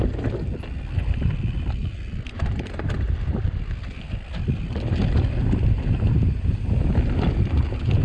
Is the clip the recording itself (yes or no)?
yes